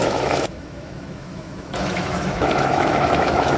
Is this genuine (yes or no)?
no